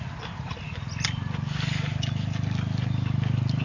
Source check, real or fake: real